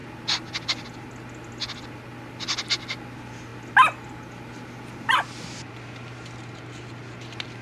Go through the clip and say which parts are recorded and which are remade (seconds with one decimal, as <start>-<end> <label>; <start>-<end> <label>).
0.0-7.6 recorded